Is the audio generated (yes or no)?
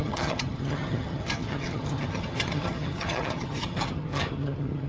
yes